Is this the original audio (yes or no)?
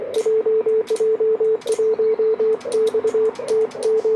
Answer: yes